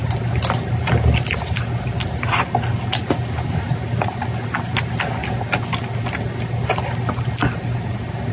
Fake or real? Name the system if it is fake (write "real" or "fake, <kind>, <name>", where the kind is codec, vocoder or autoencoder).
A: real